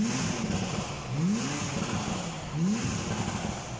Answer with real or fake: real